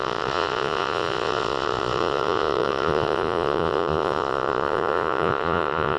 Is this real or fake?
fake